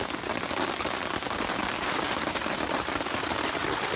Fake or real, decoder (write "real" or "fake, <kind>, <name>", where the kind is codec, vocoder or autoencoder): real